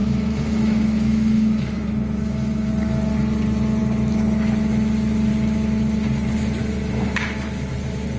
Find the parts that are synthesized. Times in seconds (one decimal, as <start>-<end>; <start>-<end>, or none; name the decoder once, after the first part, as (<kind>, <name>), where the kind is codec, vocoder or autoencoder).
0.0-2.7 (autoencoder, DAC-VAE); 6.6-7.7